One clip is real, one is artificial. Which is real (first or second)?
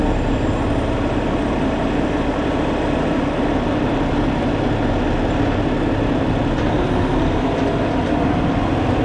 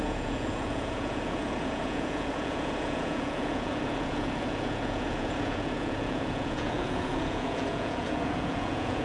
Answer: first